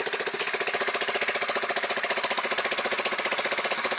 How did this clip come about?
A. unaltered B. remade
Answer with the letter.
A